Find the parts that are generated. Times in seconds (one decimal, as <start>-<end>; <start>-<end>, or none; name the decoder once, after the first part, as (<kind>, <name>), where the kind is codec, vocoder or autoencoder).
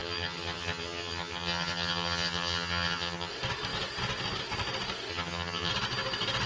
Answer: 0.0-3.3 (vocoder, HiFi-GAN); 5.1-5.7